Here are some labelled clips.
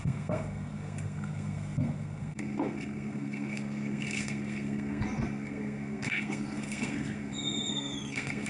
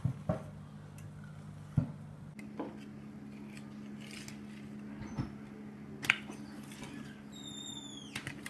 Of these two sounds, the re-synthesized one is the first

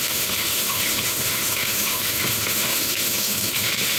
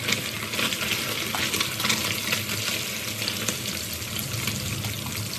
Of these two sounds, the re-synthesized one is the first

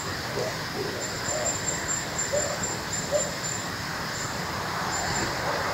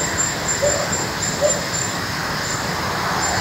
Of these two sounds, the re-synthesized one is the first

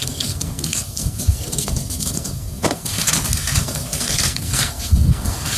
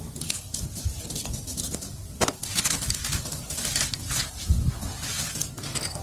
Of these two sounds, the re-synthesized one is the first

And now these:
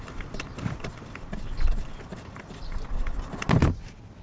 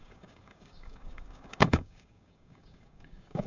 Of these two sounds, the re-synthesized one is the second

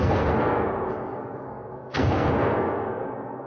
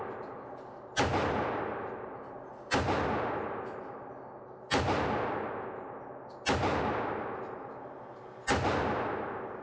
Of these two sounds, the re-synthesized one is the first